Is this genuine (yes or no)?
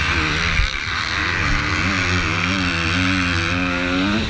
yes